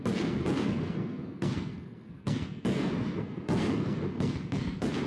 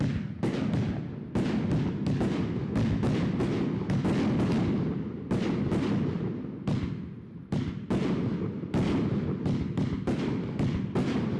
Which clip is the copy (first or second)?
first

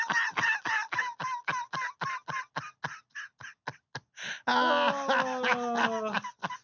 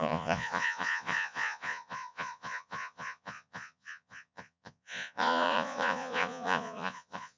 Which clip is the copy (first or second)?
second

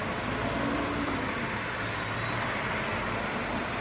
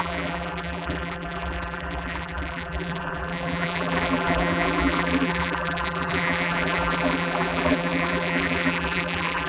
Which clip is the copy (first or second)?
second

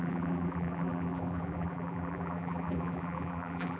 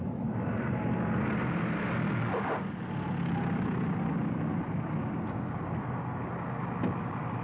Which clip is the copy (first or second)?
first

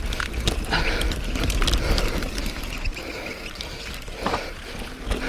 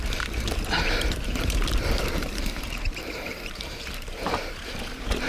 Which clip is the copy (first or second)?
second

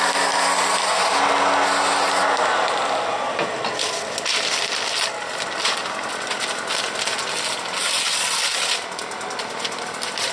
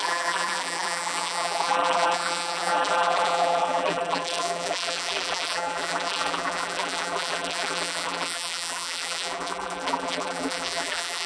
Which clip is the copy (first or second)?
second